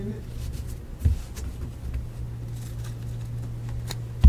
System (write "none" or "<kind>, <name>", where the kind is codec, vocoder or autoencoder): none